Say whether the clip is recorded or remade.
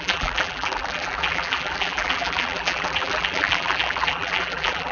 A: remade